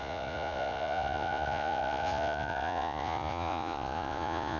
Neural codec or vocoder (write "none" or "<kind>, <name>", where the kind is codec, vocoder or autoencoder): vocoder, Vocos